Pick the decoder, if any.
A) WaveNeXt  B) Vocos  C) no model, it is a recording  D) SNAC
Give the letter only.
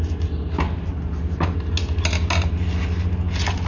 C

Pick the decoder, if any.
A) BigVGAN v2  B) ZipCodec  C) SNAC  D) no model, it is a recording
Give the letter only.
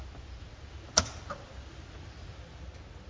D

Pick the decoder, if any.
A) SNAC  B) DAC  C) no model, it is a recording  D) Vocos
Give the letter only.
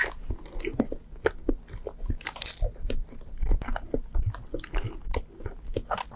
C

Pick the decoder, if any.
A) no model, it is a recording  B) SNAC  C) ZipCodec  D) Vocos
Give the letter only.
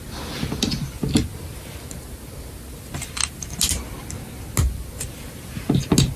A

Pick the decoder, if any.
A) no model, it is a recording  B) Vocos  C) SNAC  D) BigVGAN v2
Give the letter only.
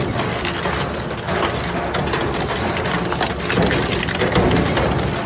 A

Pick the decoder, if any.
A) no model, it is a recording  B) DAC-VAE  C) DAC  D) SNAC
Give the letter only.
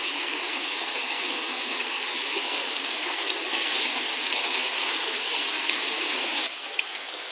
D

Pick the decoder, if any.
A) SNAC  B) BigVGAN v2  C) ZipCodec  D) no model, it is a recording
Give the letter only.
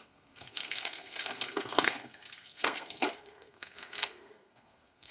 A